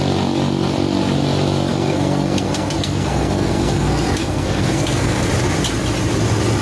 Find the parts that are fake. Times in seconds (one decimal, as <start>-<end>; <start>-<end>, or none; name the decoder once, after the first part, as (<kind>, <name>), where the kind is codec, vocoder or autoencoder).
1.7-5.3 (codec, SNAC)